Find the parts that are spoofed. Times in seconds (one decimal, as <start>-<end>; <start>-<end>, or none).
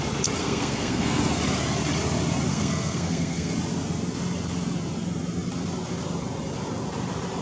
0.4-1.2; 2.5-3.5